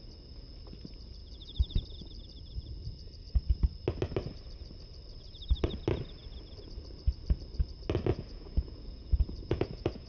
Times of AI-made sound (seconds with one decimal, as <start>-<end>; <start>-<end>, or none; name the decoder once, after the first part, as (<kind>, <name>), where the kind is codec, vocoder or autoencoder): 1.2-1.8 (vocoder, Vocos); 8.1-10.1